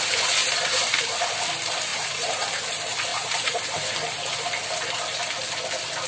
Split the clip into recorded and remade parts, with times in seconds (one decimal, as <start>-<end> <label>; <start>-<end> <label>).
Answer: 0.0-0.4 recorded; 0.4-1.3 remade; 1.3-1.9 recorded; 1.9-2.5 remade; 2.5-3.1 recorded; 3.1-3.9 remade; 3.9-6.1 recorded

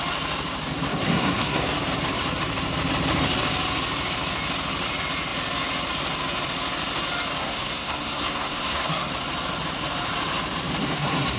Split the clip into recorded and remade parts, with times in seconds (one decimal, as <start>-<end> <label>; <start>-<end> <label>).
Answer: 0.0-0.9 recorded; 0.9-1.6 remade; 1.6-7.4 recorded; 7.4-9.1 remade; 9.1-10.8 recorded; 10.8-11.4 remade